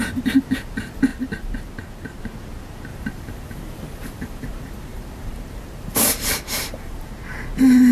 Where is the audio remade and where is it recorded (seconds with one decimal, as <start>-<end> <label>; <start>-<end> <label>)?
0.0-2.9 recorded; 2.9-7.1 remade; 7.1-7.9 recorded